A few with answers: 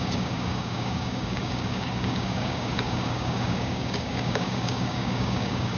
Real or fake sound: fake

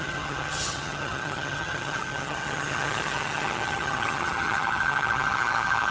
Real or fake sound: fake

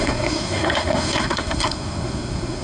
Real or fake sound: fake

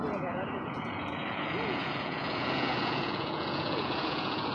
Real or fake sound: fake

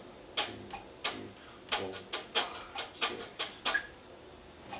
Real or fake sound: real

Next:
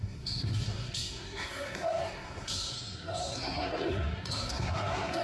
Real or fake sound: fake